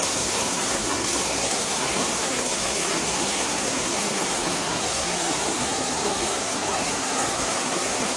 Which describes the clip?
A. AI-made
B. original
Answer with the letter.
A